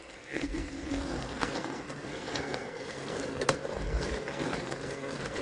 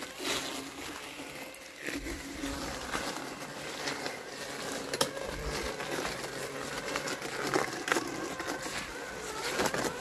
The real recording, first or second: second